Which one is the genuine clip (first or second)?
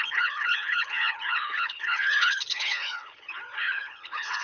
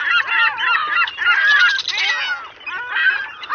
second